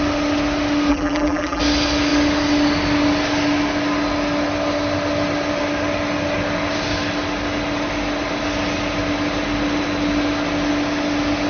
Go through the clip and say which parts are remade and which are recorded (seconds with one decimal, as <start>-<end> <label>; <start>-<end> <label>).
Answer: 0.0-0.9 recorded; 0.9-1.6 remade; 1.6-11.5 recorded